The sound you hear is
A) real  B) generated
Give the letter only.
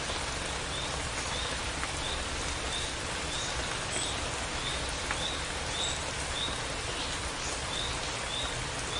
A